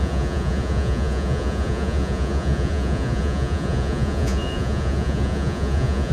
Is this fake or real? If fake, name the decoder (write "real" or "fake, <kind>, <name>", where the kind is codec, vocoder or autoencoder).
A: fake, vocoder, Vocos